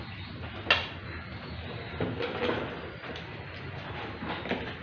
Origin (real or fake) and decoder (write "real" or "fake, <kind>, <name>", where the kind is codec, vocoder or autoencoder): real